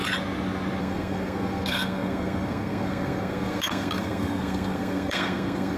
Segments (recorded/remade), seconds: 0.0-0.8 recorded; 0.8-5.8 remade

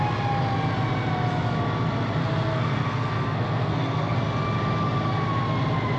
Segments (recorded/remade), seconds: 0.0-2.2 recorded; 2.2-4.2 remade; 4.2-6.0 recorded